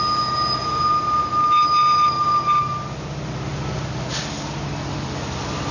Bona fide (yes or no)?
yes